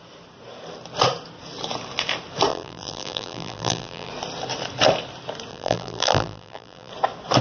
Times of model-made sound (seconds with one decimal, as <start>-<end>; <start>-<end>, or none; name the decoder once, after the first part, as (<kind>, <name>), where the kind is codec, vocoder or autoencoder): 2.5-4.1 (vocoder, BigVGAN v2); 5.5-6.9